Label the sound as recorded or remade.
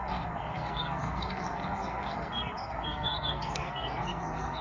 remade